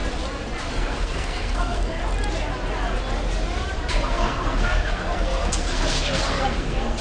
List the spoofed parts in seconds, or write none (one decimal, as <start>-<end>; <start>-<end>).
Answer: 0.7-2.0; 3.9-7.0